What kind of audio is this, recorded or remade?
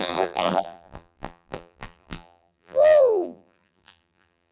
remade